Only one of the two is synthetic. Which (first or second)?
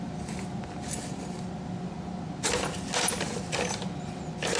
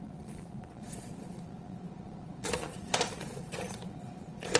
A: second